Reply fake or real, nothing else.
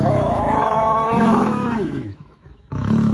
fake